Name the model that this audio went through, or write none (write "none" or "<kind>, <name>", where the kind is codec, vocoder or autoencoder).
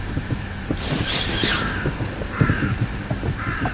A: vocoder, BigVGAN v2